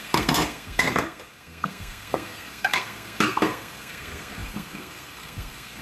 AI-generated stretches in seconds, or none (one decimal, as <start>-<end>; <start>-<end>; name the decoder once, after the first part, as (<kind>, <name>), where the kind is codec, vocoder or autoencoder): 0.0-5.8 (codec, SNAC)